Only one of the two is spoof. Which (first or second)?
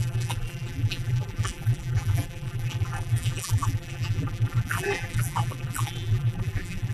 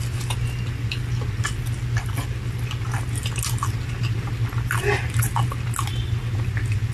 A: first